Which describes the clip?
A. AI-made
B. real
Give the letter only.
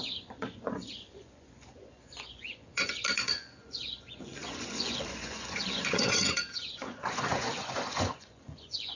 A